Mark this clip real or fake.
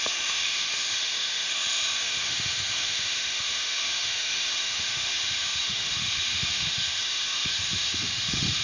fake